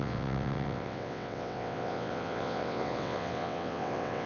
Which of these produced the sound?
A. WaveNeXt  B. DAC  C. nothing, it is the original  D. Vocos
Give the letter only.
A